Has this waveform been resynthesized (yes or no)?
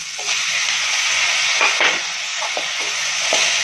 yes